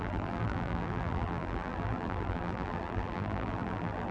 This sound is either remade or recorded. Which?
remade